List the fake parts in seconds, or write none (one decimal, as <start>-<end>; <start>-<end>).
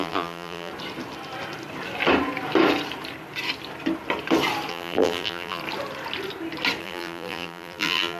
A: 0.0-0.7; 4.7-5.6; 6.8-8.2